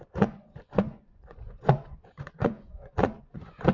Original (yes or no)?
no